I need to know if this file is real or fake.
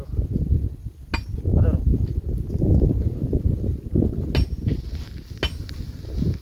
real